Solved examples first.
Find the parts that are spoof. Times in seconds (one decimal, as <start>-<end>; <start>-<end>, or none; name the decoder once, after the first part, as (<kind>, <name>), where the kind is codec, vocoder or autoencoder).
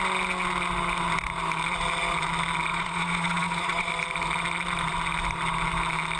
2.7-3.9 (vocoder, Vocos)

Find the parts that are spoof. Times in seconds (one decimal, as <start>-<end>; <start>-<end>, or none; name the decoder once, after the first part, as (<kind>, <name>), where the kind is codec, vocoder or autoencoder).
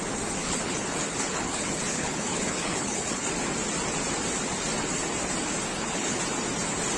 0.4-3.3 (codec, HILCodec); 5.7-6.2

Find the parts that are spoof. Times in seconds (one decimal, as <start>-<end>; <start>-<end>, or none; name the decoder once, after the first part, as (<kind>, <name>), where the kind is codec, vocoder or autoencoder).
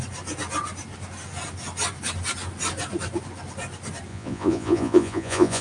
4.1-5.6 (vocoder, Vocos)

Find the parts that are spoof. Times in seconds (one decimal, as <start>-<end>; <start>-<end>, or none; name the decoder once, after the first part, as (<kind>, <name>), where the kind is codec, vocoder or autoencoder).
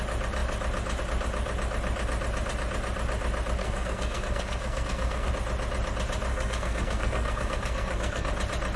3.6-5.3 (codec, SNAC); 6.3-8.3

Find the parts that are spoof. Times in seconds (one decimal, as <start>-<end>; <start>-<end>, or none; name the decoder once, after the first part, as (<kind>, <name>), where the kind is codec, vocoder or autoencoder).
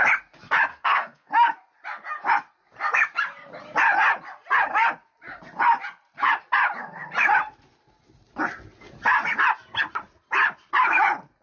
0.7-1.3 (codec, SNAC)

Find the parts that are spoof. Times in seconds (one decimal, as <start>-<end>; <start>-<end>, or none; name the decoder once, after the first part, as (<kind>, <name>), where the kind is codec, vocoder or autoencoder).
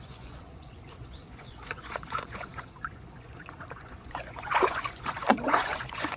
0.0-6.2 (vocoder, Vocos)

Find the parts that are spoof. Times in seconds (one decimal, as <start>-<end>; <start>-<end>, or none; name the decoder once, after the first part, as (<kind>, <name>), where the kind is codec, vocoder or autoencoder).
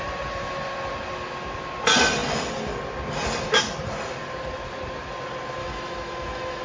5.6-6.6 (autoencoder, DAC-VAE)